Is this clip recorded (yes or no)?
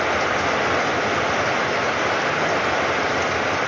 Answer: yes